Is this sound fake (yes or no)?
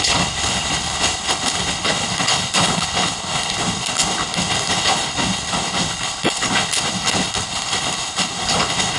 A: yes